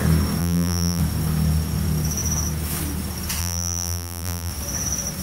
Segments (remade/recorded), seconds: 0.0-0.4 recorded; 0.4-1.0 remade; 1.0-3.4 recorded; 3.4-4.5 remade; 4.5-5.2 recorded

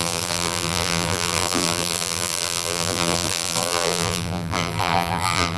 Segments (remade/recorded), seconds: 0.0-5.6 remade

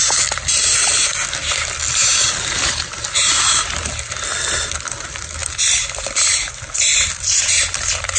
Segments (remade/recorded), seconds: 0.0-5.4 recorded; 5.4-7.5 remade; 7.5-8.2 recorded